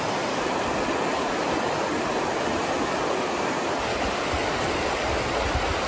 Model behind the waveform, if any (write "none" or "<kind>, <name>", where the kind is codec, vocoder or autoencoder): none